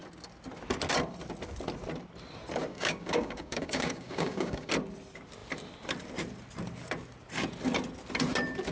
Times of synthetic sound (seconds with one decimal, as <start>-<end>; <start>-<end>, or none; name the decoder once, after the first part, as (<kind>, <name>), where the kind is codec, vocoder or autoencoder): 2.7-4.7 (codec, DAC)